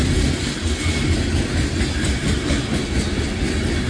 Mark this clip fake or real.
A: real